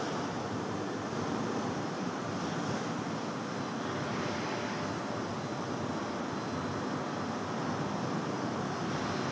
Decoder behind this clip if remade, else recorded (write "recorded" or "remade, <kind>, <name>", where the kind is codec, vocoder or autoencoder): recorded